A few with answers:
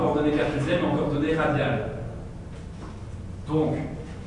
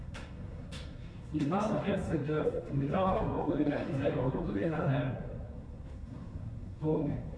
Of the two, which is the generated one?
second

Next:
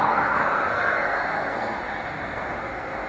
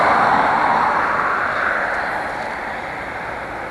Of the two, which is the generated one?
first